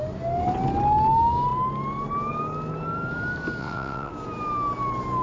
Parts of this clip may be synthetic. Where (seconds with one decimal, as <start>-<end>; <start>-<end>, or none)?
3.6-4.1

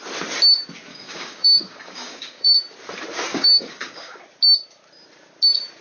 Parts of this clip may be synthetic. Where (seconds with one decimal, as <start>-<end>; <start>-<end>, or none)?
0.9-2.5; 3.3-4.2

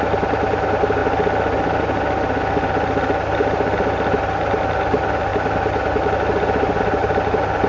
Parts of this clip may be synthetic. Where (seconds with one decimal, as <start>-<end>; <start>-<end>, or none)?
none

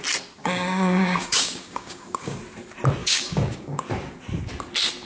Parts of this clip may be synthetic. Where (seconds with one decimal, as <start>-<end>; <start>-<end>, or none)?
0.4-2.4; 3.0-3.8

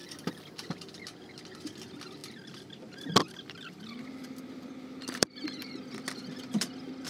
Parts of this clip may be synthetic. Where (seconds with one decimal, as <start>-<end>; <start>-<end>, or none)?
2.2-5.5